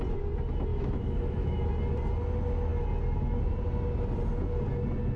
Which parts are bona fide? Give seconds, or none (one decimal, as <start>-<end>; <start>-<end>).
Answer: 0.0-0.7; 1.7-5.2